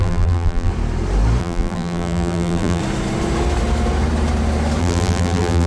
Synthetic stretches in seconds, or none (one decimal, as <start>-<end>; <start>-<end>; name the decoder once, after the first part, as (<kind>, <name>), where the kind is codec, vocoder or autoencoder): 0.0-0.7 (vocoder, BigVGAN v2); 1.4-2.8; 4.8-5.7